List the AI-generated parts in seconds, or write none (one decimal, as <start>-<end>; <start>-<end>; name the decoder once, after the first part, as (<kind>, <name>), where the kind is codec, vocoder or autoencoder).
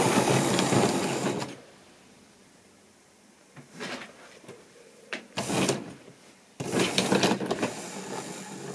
none